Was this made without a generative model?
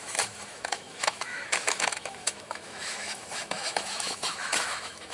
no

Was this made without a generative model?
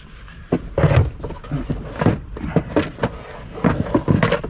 yes